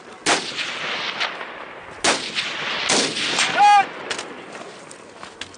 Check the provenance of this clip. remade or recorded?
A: recorded